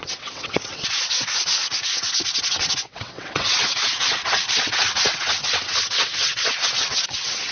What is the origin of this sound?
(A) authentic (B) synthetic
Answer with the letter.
B